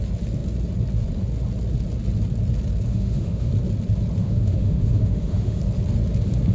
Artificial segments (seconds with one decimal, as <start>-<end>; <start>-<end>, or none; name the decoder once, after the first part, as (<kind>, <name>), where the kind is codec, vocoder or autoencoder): 2.9-3.5 (autoencoder, DAC-VAE); 4.2-5.6